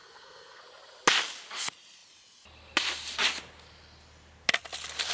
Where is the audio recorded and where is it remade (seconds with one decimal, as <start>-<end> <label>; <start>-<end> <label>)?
0.0-0.6 remade; 0.6-5.1 recorded

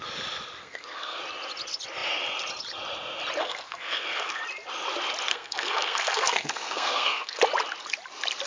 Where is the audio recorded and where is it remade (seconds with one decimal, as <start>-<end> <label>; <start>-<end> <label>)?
0.0-0.6 recorded; 0.6-1.2 remade; 1.2-3.4 recorded; 3.4-4.4 remade; 4.4-5.3 recorded; 5.3-7.4 remade; 7.4-8.5 recorded